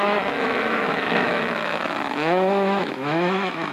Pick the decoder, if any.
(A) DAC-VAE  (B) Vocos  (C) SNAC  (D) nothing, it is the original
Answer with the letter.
A